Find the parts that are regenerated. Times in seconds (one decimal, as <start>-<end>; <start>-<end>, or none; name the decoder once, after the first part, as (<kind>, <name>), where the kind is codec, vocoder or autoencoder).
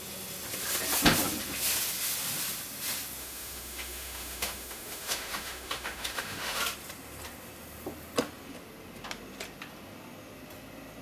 3.2-6.6 (autoencoder, DAC-VAE)